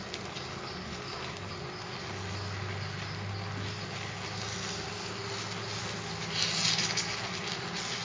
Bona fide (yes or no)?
yes